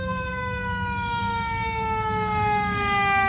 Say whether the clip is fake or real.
fake